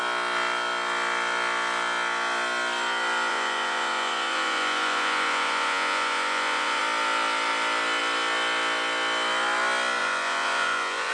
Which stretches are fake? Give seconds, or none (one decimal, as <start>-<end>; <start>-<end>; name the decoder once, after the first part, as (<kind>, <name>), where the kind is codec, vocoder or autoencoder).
3.3-6.8 (vocoder, Vocos); 10.0-11.1

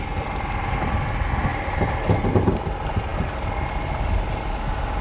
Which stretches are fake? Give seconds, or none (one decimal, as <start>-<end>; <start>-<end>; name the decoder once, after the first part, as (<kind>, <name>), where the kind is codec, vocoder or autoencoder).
none